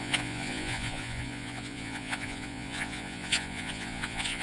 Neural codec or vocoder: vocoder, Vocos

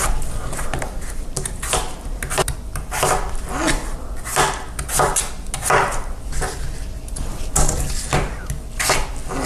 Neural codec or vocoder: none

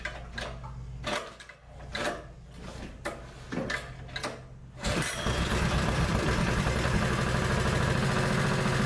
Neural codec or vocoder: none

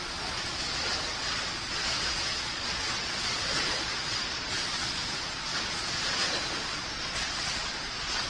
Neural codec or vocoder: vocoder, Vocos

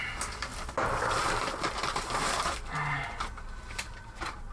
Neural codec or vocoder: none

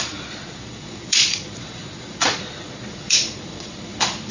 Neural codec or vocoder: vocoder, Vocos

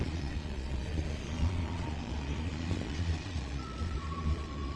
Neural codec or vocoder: vocoder, Vocos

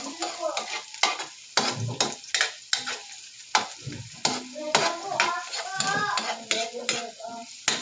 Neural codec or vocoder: none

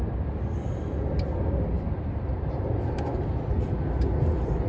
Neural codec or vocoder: none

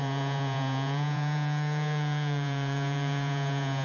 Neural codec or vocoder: vocoder, Vocos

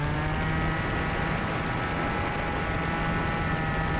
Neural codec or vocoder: none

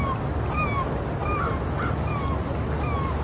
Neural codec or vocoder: none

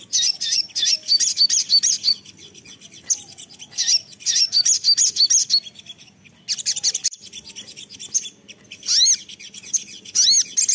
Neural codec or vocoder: none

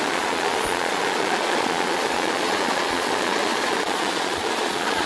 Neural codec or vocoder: vocoder, Vocos